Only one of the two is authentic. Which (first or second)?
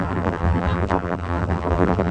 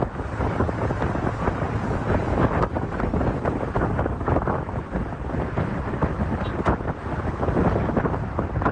second